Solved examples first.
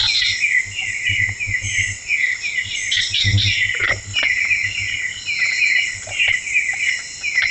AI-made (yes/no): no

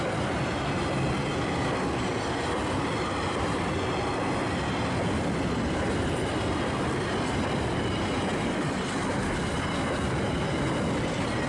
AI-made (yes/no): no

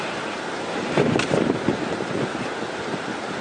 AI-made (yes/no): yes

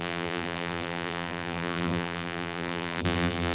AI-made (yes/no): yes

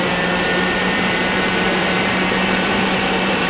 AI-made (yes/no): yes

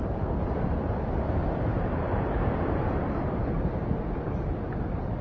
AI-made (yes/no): no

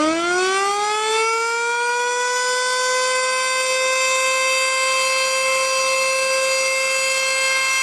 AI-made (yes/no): no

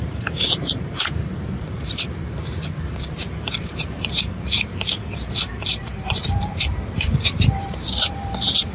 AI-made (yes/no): yes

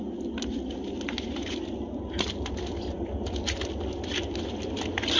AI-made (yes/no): no